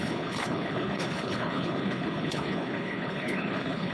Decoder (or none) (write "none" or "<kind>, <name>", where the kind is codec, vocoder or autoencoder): codec, HILCodec